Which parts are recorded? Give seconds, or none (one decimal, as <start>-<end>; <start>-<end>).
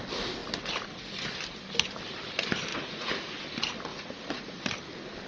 0.0-2.7; 3.3-3.9; 4.6-5.3